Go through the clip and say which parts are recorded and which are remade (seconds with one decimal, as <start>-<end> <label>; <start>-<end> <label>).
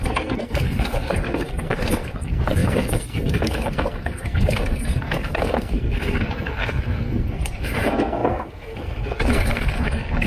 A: 0.0-10.3 remade